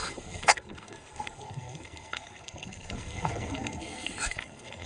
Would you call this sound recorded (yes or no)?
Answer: no